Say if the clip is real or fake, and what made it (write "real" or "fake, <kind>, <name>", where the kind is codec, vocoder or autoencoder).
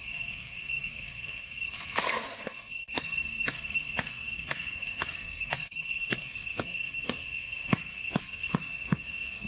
fake, codec, SNAC